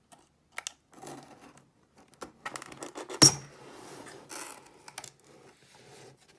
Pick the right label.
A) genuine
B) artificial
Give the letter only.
A